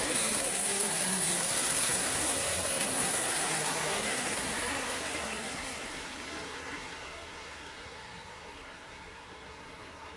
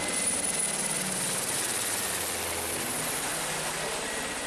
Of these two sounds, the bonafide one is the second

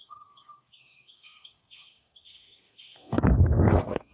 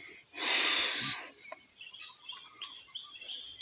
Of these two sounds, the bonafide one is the second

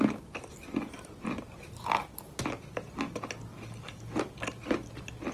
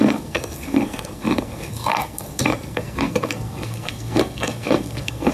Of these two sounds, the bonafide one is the first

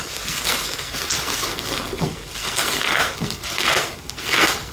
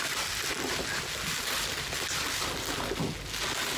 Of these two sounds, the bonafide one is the second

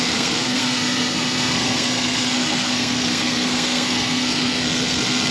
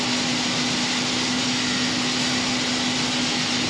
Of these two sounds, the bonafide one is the second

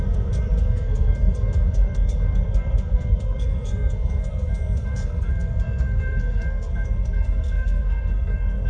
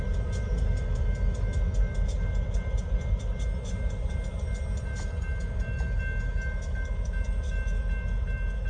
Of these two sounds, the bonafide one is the second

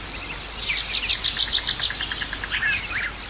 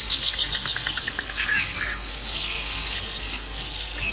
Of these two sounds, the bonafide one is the first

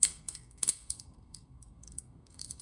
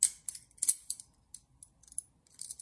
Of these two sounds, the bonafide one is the second